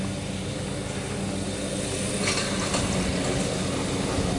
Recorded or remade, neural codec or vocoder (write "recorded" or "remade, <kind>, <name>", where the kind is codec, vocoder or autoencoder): recorded